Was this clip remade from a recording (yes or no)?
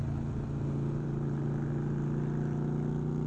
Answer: no